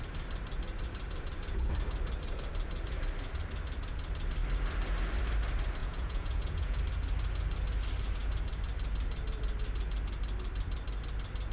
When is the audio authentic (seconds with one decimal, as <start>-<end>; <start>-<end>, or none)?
0.0-5.8; 6.8-11.5